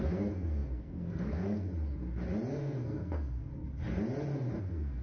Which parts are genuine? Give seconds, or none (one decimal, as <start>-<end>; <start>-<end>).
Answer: 1.7-2.5; 3.5-4.6